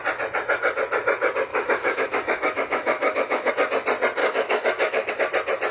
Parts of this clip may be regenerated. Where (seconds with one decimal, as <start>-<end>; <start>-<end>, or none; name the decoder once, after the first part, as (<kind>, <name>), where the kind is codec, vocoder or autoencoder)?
1.5-3.5 (autoencoder, DAC-VAE); 4.2-5.1